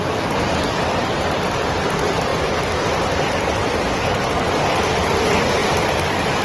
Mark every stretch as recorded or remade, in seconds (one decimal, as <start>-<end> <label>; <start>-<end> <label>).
0.0-6.4 recorded